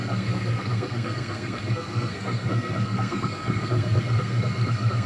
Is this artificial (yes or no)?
yes